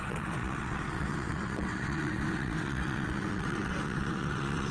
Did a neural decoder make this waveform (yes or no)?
yes